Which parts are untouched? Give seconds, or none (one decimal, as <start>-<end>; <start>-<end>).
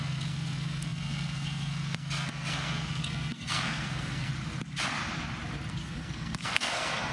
4.3-5.7